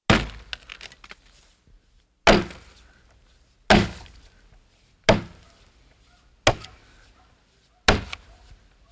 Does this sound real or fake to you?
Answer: real